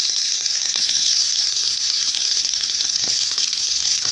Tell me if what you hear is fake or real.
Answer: fake